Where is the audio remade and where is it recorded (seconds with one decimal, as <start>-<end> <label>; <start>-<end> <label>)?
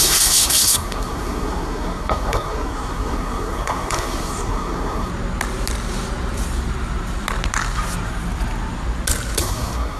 0.0-5.1 remade; 5.1-9.4 recorded; 9.4-10.0 remade